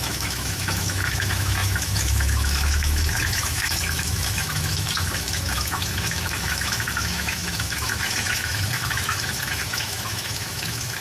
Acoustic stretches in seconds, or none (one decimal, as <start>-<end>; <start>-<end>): none